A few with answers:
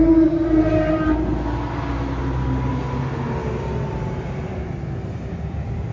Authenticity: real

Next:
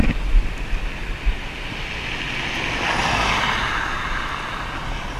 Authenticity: real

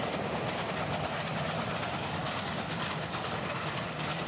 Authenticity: real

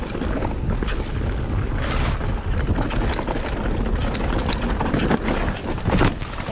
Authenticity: real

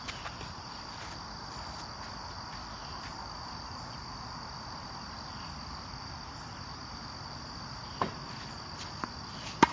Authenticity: fake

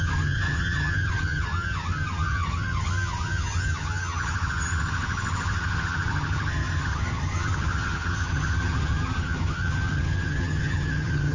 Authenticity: fake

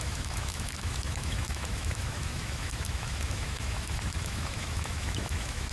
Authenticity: fake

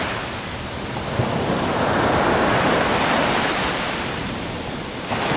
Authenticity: real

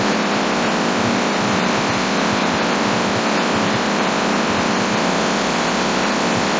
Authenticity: real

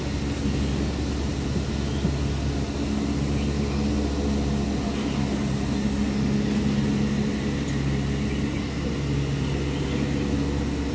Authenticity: real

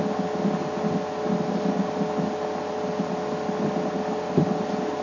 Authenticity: real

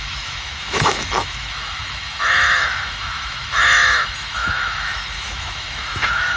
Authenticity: fake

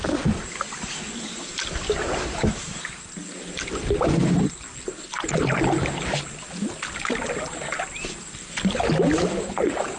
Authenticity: real